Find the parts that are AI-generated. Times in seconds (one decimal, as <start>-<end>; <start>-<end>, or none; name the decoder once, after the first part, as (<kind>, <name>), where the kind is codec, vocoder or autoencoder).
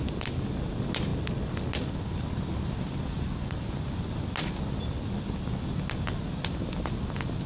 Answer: none